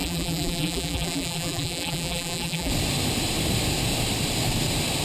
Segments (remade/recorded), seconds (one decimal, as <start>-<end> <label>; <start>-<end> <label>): 0.0-2.7 remade; 2.7-5.0 recorded